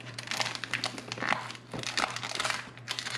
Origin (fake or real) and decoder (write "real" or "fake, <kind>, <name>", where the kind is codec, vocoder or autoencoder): real